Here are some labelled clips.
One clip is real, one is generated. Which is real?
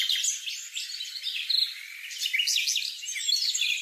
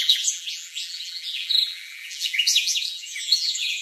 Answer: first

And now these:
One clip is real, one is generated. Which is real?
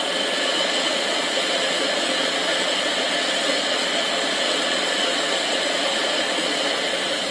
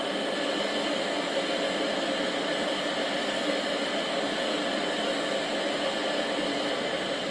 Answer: second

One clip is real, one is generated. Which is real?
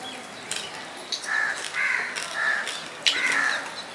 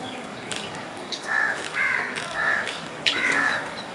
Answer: first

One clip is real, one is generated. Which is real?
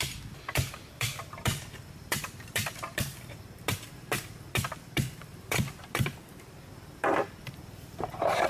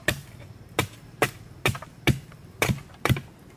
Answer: second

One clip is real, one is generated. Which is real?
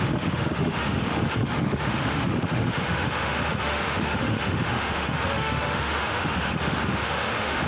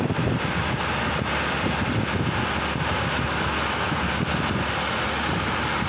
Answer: second